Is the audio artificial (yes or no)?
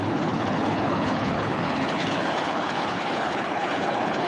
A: yes